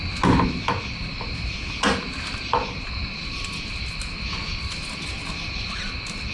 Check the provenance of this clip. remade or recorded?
recorded